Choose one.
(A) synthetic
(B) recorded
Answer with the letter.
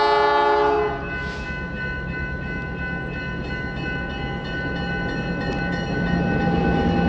B